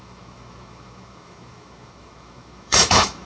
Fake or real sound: fake